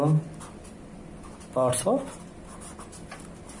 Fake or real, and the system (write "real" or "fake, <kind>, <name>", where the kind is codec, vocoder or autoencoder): real